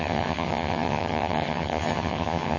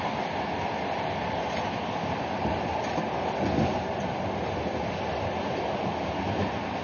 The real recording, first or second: second